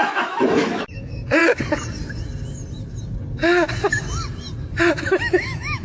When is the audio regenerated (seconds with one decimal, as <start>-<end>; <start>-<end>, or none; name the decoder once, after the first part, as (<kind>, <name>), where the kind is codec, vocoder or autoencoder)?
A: 0.0-1.4 (autoencoder, DAC-VAE); 4.9-5.8

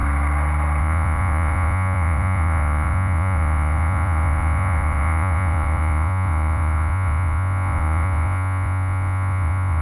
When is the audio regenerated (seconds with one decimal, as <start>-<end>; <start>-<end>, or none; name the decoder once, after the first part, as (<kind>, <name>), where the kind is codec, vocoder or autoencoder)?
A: 0.8-9.8 (vocoder, Vocos)

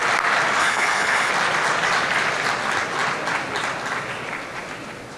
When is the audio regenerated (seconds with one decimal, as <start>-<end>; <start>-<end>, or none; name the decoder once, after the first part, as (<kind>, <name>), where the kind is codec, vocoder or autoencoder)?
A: 0.6-1.3 (codec, HILCodec)